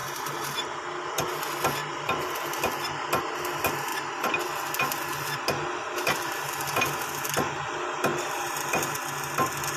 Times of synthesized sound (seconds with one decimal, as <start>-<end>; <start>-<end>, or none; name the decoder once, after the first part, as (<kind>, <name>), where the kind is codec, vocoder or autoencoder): 0.0-0.7 (vocoder, BigVGAN v2); 1.8-2.6